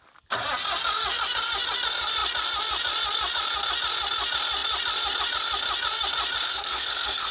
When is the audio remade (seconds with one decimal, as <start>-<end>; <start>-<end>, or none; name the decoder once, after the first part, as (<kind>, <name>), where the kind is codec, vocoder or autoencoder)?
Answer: 6.5-7.3 (codec, SNAC)